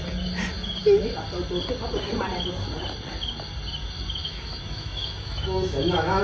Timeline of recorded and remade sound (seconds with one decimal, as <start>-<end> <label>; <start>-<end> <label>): 0.0-4.2 recorded; 4.2-6.2 remade